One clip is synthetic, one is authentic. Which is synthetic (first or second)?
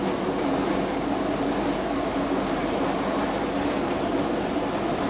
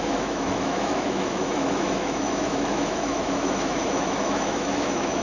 second